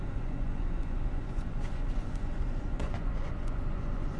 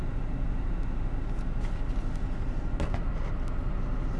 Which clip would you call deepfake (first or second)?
first